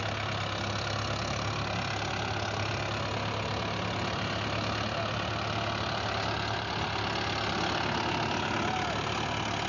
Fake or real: real